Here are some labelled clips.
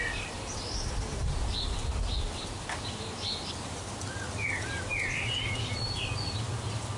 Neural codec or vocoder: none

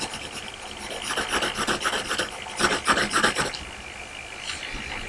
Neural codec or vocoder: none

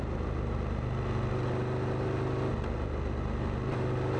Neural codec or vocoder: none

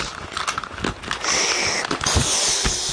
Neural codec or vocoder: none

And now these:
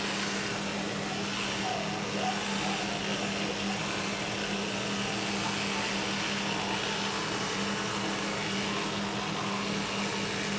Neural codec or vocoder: none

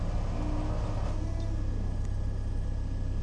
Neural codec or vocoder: none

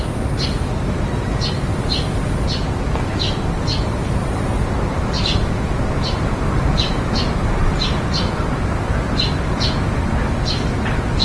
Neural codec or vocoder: none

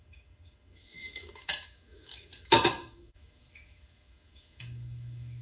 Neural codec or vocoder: autoencoder, DAC-VAE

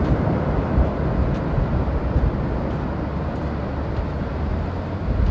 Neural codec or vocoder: none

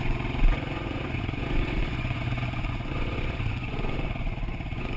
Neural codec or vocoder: vocoder, Vocos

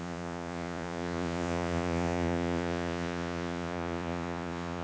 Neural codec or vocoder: vocoder, Vocos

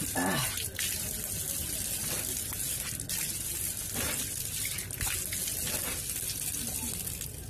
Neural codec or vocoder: none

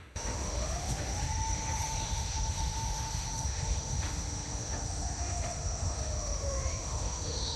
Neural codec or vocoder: autoencoder, DAC-VAE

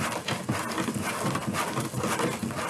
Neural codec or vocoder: none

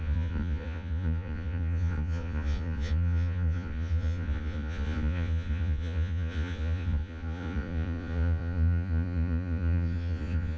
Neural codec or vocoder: vocoder, Vocos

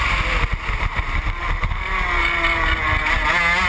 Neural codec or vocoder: none